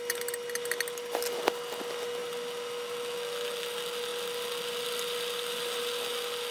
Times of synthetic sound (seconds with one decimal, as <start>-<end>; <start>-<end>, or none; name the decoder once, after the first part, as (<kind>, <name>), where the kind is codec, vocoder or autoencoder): none